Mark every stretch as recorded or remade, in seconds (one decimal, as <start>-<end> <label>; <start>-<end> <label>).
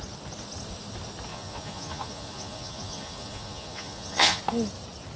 0.0-1.3 recorded; 1.3-4.4 remade; 4.4-5.2 recorded